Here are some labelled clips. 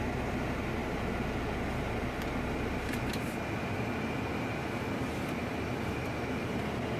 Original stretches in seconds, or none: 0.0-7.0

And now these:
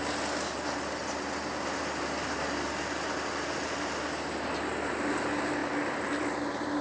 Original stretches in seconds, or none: 0.0-6.8

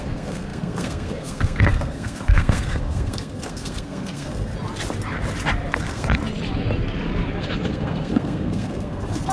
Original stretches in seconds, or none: 4.5-5.8; 6.2-7.4

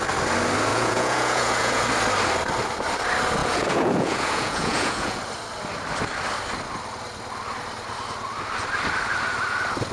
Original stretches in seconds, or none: 0.0-0.7; 1.8-3.4; 5.2-9.9

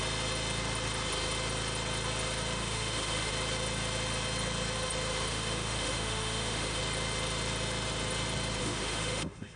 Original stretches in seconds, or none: 0.0-2.6; 3.3-5.3; 6.8-8.6

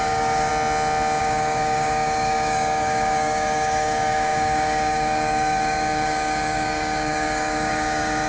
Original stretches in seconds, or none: 0.5-1.2